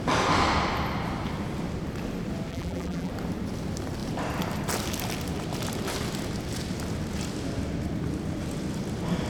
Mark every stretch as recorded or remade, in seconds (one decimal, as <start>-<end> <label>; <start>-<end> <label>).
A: 0.0-2.5 recorded; 2.5-3.1 remade; 3.1-9.3 recorded